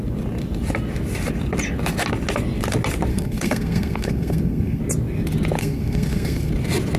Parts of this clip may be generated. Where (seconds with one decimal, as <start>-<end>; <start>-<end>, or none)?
3.1-4.8; 5.6-6.5